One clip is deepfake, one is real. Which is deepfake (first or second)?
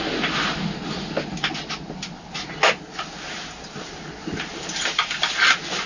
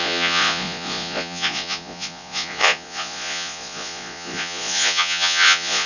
second